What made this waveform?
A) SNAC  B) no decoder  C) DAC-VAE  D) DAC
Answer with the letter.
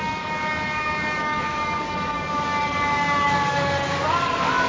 D